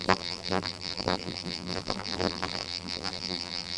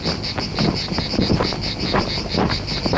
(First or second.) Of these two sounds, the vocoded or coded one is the first